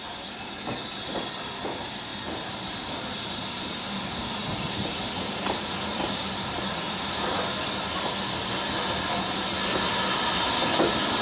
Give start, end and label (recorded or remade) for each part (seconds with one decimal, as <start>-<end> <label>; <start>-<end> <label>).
0.0-2.1 recorded; 2.1-7.1 remade; 7.1-11.2 recorded